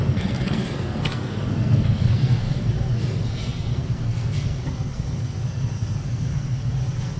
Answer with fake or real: fake